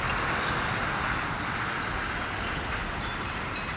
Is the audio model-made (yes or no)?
no